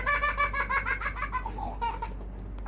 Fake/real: real